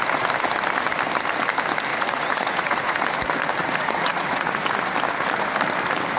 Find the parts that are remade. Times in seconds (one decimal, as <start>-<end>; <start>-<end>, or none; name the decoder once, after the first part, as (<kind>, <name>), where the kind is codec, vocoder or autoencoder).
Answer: 1.9-3.0 (vocoder, Vocos); 3.6-4.5